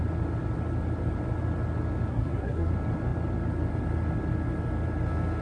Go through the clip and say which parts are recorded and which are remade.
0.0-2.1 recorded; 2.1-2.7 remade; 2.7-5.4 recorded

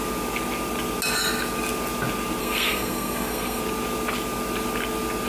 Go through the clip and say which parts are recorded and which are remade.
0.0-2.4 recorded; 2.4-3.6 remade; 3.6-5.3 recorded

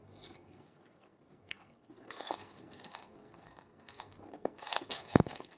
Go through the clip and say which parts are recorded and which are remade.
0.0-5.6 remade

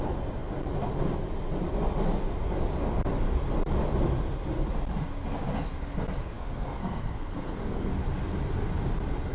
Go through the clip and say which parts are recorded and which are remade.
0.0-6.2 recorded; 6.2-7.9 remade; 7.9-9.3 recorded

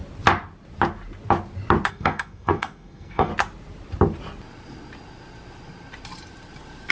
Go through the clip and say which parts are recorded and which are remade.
0.0-1.9 recorded; 1.9-3.3 remade; 3.3-6.9 recorded